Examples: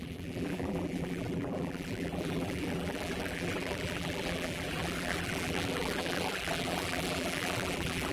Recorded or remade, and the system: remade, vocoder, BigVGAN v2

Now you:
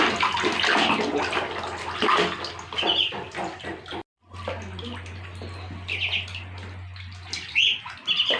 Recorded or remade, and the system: recorded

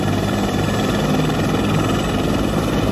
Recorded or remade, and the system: recorded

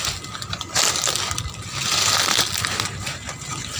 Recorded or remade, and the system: recorded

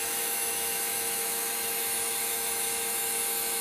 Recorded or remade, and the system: remade, autoencoder, DAC-VAE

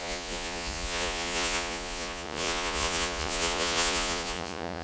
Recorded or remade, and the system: remade, vocoder, Vocos